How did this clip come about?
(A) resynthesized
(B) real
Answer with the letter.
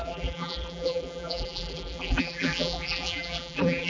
A